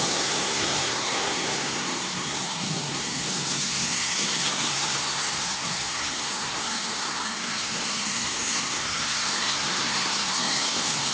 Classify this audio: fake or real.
fake